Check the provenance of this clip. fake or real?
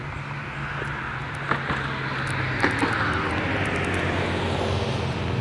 real